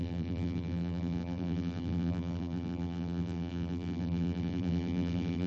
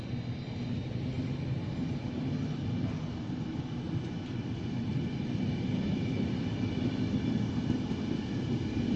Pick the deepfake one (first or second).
first